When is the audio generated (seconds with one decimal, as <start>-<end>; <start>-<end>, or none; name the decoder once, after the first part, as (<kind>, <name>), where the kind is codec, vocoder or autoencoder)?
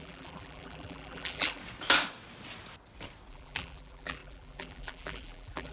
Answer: 0.0-1.6 (vocoder, BigVGAN v2); 3.3-5.7